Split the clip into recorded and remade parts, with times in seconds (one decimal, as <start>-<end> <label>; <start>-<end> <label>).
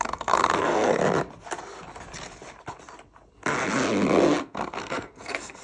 0.0-1.0 remade; 1.0-4.4 recorded; 4.4-5.6 remade